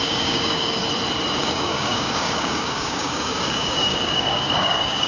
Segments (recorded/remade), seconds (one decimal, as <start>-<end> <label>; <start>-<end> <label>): 0.0-0.8 remade; 0.8-1.4 recorded; 1.4-5.1 remade